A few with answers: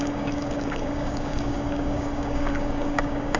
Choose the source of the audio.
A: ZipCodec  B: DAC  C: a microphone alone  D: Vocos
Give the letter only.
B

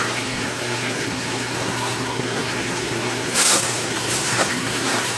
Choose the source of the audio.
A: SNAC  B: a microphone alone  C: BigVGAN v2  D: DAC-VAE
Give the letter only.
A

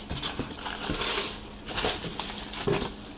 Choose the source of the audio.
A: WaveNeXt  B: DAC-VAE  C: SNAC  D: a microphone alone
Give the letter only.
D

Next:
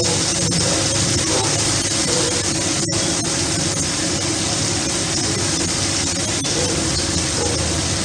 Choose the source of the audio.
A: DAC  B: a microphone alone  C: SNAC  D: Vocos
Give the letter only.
B